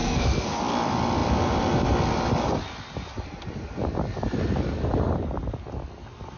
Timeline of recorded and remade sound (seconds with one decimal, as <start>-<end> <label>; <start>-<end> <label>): 0.0-0.6 remade; 0.6-6.4 recorded